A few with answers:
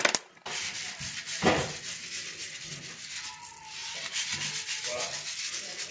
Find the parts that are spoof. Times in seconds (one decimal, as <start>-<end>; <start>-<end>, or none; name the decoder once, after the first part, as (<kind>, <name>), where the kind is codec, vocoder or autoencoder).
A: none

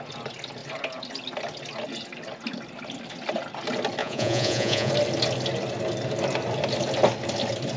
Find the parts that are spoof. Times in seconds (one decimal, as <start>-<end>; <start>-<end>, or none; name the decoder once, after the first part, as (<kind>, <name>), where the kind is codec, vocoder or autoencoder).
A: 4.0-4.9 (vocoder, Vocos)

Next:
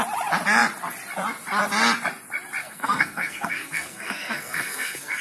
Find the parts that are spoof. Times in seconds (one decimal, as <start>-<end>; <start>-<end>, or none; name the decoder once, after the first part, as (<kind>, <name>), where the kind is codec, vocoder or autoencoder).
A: 2.6-5.2 (codec, SNAC)

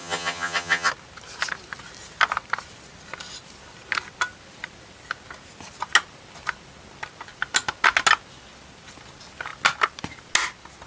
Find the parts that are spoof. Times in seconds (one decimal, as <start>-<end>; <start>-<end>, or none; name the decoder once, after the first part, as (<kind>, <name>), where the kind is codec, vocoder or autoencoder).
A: 0.0-0.9 (vocoder, HiFi-GAN)

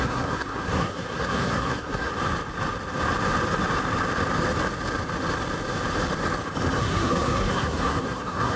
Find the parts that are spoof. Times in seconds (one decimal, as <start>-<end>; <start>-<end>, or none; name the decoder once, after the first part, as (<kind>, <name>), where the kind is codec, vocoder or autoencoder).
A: 0.0-2.1 (codec, SNAC); 6.8-8.6

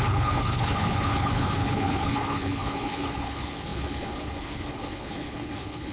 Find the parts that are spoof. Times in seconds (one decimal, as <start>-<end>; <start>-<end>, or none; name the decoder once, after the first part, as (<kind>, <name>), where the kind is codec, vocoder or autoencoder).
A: 0.0-5.9 (codec, HILCodec)